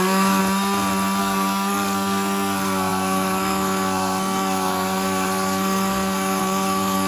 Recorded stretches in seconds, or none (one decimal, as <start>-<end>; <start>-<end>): 0.4-1.2